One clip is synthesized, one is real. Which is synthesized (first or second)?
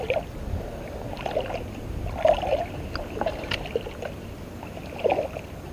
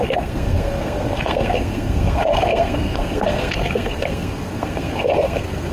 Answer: second